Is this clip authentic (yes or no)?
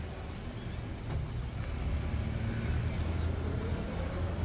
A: yes